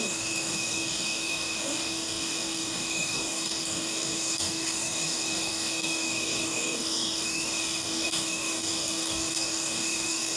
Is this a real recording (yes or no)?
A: no